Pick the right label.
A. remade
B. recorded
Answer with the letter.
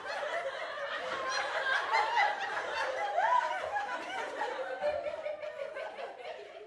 A